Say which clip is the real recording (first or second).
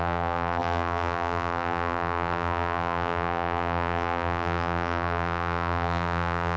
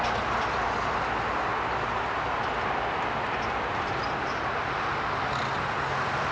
second